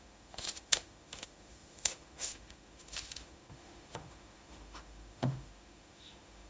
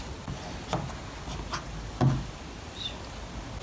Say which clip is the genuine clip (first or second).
second